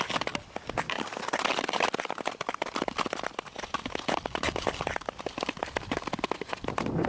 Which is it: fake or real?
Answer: real